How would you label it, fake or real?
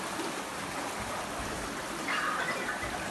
real